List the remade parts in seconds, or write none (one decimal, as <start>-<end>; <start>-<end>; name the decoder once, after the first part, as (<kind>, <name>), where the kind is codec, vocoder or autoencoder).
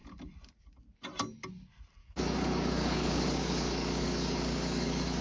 2.0-5.2 (codec, DAC)